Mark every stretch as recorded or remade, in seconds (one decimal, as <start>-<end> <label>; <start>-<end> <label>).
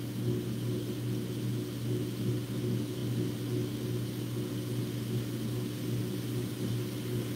0.0-7.4 recorded